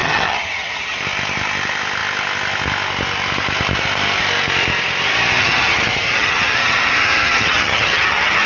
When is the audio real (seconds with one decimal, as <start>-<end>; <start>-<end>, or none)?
1.0-5.4